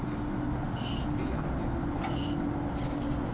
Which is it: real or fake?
real